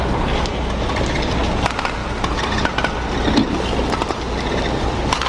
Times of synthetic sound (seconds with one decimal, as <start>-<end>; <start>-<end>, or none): none